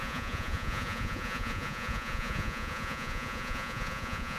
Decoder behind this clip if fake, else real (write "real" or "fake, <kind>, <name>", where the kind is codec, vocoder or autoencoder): fake, vocoder, Vocos